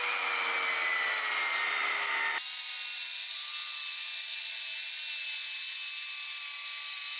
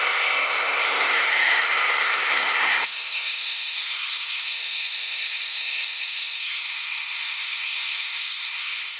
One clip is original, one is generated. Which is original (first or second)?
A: first